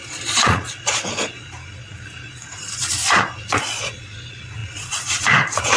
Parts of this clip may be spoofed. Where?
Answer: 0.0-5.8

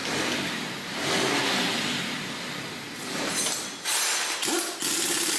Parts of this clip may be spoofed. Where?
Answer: none

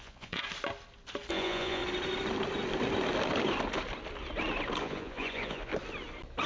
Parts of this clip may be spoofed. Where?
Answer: 0.0-0.4; 1.3-1.8; 4.8-5.7

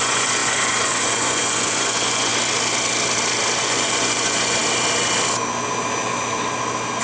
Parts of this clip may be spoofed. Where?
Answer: 0.0-2.3; 3.6-4.6